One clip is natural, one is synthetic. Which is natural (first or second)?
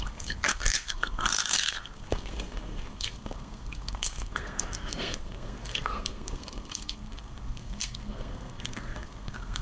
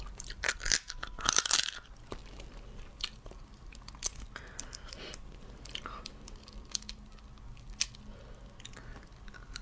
second